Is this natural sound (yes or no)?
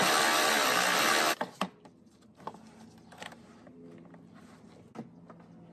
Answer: yes